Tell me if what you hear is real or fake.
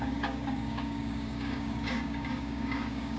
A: fake